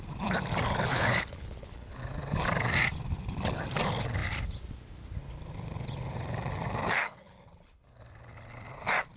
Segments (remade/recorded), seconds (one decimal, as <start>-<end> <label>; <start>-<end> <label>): 0.0-0.9 recorded; 0.9-2.1 remade; 2.1-7.0 recorded; 7.0-8.0 remade; 8.0-9.2 recorded